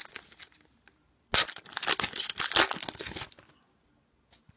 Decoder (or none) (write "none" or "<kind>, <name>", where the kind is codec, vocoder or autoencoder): none